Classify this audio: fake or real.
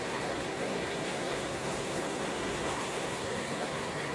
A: fake